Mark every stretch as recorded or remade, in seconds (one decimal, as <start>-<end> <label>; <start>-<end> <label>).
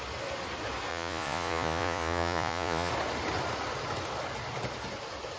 0.0-0.9 recorded; 0.9-2.9 remade; 2.9-5.4 recorded